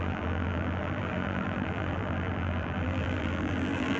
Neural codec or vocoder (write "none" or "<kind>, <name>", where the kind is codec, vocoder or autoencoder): vocoder, BigVGAN v2